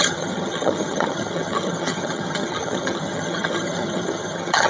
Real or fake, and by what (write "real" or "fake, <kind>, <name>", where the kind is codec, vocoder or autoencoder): fake, vocoder, HiFi-GAN